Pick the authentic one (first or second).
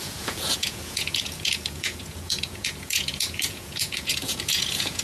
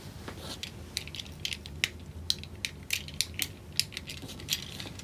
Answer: second